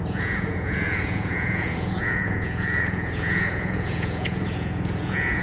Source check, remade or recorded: remade